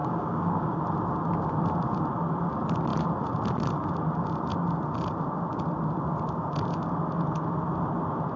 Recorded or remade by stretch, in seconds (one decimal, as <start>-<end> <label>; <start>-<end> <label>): 0.0-0.8 remade; 0.8-8.4 recorded